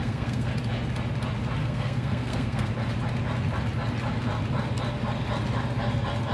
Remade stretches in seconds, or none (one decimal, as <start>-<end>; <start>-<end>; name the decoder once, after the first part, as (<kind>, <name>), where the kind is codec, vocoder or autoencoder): 0.0-0.5 (codec, SNAC); 1.6-2.7